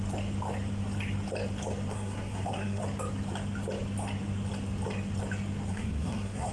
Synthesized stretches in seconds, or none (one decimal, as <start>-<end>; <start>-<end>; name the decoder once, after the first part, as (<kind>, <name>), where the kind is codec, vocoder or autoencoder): 1.9-2.8 (codec, SNAC); 5.7-6.5